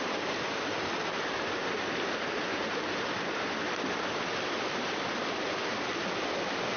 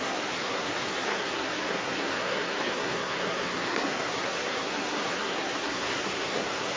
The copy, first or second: second